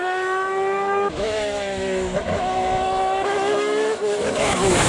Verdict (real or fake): fake